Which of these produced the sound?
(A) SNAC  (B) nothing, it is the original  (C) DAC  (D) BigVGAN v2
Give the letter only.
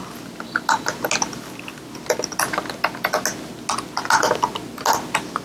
B